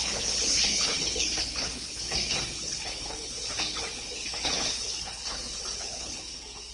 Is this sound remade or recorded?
remade